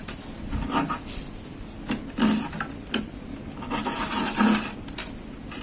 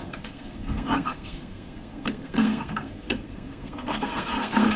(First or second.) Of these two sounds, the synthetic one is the second